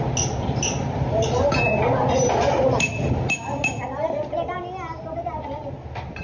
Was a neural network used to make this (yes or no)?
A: no